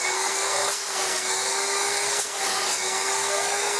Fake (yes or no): yes